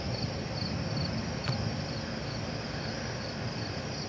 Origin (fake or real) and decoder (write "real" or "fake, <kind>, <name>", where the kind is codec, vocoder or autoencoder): real